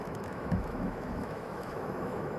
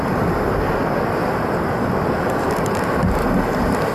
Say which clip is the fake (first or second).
first